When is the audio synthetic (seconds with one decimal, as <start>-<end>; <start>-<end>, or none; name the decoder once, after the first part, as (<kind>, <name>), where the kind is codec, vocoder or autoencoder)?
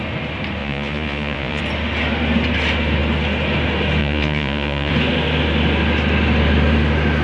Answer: 0.6-1.6 (vocoder, Vocos); 4.0-4.9